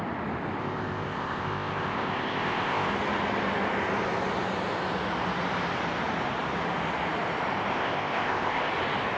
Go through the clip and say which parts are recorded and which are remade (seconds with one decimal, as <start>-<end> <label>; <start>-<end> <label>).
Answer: 0.0-0.6 recorded; 0.6-2.9 remade; 2.9-7.7 recorded; 7.7-8.7 remade; 8.7-9.2 recorded